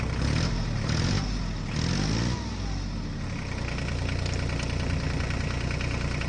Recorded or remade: recorded